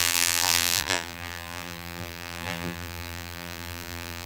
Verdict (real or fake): fake